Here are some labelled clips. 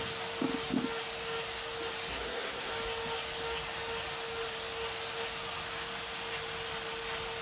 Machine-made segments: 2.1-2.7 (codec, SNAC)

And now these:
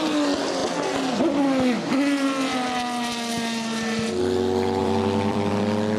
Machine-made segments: 4.8-5.5 (vocoder, BigVGAN v2)

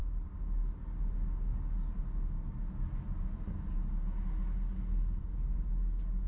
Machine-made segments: none

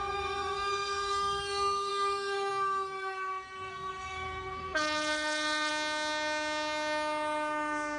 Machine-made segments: 0.0-5.7 (codec, SNAC)

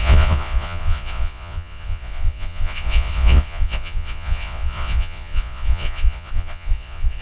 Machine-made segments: 0.0-7.2 (vocoder, Vocos)